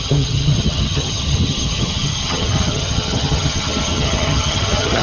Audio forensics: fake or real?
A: fake